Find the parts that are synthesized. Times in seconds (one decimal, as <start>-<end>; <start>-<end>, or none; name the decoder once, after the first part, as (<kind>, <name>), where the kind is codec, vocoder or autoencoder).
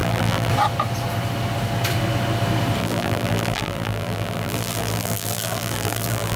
0.0-0.5 (vocoder, BigVGAN v2); 2.8-6.4